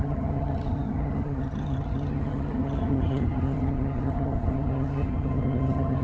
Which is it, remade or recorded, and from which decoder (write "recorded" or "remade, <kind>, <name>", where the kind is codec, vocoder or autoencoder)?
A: remade, vocoder, HiFi-GAN